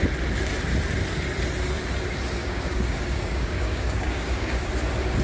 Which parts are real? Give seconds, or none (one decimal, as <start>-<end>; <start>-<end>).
0.0-2.4; 4.7-5.2